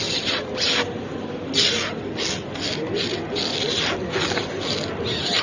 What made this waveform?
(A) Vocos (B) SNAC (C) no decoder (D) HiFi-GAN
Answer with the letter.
C